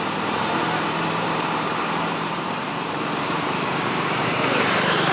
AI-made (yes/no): yes